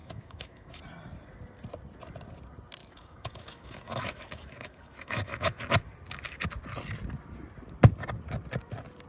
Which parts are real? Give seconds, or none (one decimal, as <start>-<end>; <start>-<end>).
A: 0.8-2.8; 5.6-9.1